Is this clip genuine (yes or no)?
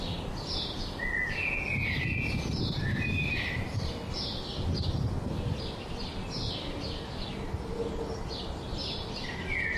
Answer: yes